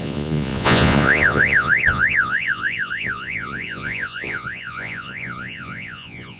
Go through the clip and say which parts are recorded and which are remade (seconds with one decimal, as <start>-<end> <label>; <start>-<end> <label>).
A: 0.0-6.4 remade